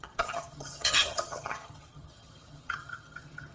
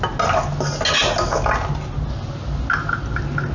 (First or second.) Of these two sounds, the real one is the second